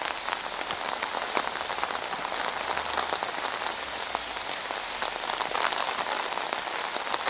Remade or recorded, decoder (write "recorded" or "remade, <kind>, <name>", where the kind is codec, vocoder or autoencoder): recorded